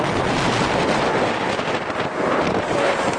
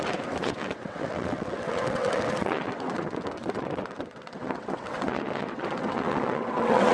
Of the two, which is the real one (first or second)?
first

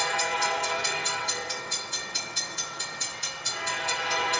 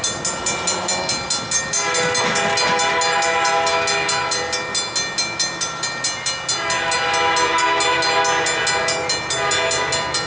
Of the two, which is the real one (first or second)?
second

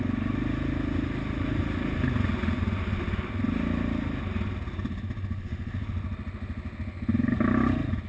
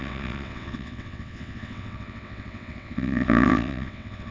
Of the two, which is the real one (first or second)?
first